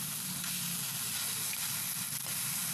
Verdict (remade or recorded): recorded